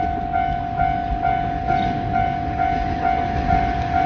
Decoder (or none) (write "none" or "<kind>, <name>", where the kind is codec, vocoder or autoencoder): none